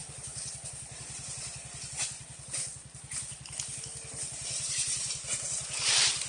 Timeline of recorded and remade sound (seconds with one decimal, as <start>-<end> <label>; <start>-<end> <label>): 0.0-6.3 recorded